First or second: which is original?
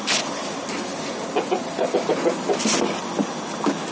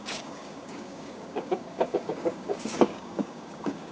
first